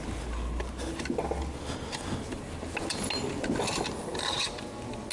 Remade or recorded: recorded